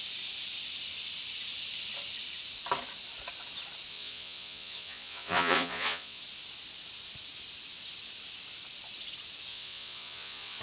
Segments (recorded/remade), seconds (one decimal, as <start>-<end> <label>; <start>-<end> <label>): 0.0-3.9 recorded; 3.9-6.2 remade; 6.2-9.5 recorded; 9.5-10.6 remade

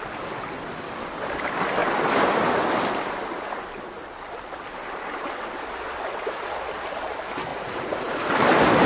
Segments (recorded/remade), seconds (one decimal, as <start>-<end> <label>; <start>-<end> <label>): 0.0-7.5 recorded; 7.5-8.3 remade; 8.3-8.9 recorded